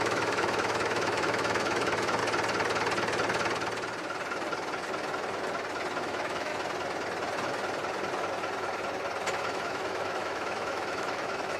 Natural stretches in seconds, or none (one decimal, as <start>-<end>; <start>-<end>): 2.2-6.0; 6.5-9.3